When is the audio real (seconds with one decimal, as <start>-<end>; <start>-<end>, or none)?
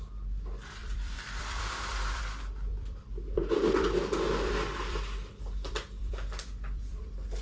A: 0.0-0.8; 2.2-2.7